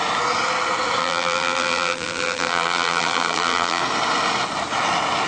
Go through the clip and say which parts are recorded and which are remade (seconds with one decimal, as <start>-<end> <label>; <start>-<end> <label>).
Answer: 0.0-1.0 recorded; 1.0-3.8 remade; 3.8-5.3 recorded